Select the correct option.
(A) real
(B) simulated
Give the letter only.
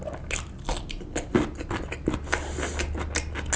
A